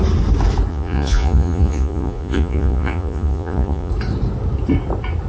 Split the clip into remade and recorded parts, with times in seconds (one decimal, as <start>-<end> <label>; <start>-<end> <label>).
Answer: 0.0-0.7 recorded; 0.7-3.9 remade; 3.9-5.3 recorded